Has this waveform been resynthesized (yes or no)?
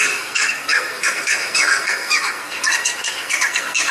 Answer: yes